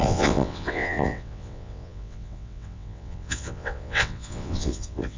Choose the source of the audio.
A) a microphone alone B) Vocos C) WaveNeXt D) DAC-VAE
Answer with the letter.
C